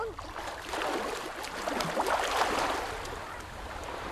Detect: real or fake real